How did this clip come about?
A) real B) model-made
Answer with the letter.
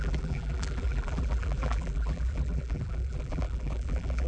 B